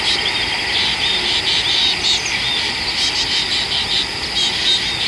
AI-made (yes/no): no